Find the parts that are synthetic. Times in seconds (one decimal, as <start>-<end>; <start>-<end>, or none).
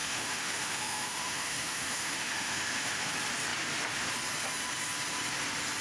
0.0-3.1